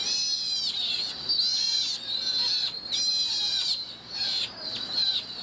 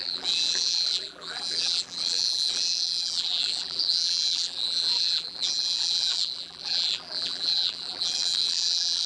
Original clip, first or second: first